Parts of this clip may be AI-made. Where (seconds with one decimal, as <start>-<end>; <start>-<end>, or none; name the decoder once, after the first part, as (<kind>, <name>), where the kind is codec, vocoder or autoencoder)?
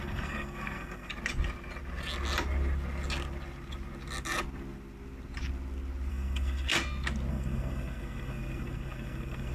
0.0-1.1 (codec, SNAC); 6.1-6.7; 7.3-9.5